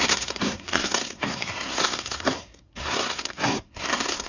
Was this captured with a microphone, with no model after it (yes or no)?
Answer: no